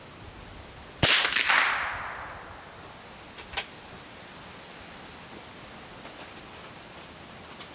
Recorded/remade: recorded